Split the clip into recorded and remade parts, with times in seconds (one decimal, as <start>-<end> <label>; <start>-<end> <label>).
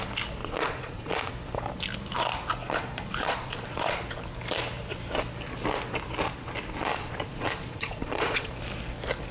0.0-0.4 recorded; 0.4-1.3 remade; 1.3-2.6 recorded; 2.6-4.0 remade; 4.0-6.8 recorded; 6.8-8.5 remade; 8.5-9.3 recorded